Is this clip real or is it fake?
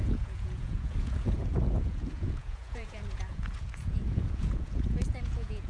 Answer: fake